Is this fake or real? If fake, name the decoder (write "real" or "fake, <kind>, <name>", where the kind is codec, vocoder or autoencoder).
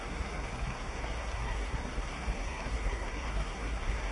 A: fake, codec, SNAC